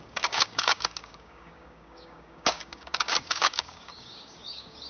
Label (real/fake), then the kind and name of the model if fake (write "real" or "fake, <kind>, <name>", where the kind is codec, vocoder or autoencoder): fake, codec, DAC